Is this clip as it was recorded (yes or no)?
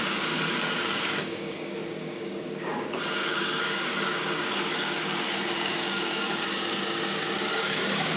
no